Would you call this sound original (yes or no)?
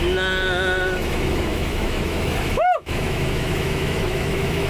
no